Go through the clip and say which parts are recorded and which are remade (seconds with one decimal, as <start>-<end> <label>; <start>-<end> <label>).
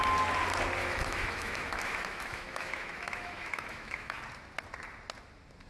0.0-0.8 recorded; 0.8-4.2 remade; 4.2-5.7 recorded